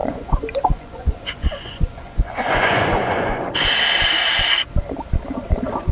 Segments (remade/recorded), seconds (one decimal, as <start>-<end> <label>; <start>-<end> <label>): 0.0-3.5 remade; 3.5-5.9 recorded